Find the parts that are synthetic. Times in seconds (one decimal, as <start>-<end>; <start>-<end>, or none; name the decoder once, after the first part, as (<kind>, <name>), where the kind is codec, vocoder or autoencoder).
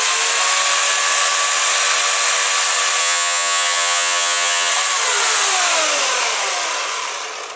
3.0-4.7 (vocoder, HiFi-GAN)